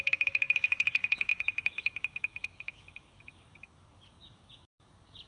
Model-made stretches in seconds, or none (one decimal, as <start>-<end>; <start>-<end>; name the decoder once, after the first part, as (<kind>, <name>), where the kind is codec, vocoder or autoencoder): 0.0-5.3 (codec, DAC)